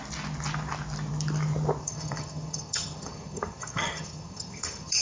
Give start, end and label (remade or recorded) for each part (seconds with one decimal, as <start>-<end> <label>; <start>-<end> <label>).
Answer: 0.0-1.8 recorded; 1.8-5.0 remade